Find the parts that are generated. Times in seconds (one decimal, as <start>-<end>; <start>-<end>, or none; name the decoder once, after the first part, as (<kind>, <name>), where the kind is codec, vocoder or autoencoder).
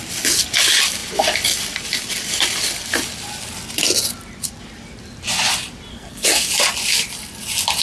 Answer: 5.9-6.5 (codec, SNAC)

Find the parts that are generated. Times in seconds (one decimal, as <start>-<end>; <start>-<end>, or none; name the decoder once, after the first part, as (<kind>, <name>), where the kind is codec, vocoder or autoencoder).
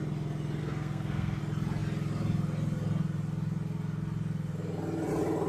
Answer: 0.6-1.4 (codec, SNAC)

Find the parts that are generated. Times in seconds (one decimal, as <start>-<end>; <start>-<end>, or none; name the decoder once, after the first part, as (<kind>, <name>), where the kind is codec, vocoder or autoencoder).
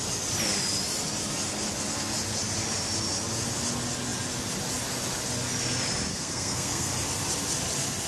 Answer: 6.1-6.9 (codec, SNAC)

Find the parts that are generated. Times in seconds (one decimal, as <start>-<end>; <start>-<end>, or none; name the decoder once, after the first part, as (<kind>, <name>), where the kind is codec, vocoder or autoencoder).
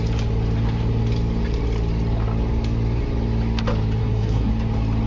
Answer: 4.0-4.5 (codec, SNAC)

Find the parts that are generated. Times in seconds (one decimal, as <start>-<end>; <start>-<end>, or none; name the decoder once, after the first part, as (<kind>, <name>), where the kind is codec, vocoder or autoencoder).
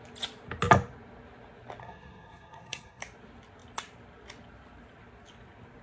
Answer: 1.8-3.0 (codec, SNAC)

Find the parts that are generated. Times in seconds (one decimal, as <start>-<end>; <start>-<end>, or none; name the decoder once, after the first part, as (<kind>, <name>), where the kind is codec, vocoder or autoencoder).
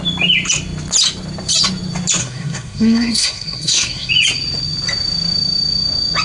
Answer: 2.2-4.1 (codec, SNAC)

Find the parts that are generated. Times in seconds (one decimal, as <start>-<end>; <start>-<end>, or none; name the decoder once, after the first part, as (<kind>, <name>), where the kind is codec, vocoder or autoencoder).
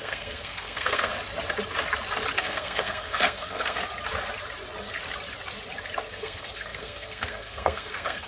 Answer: 0.0-1.1 (codec, SNAC); 2.4-3.8; 6.1-8.3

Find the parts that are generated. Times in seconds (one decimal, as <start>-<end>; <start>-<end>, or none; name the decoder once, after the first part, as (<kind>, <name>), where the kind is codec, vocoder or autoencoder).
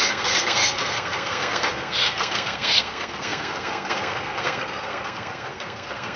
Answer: 0.0-6.2 (codec, SNAC)